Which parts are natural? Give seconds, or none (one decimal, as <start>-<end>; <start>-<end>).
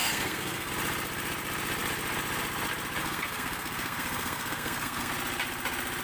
0.7-3.0; 5.1-6.0